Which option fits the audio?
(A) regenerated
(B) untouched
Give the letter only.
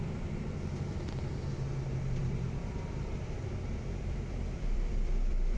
A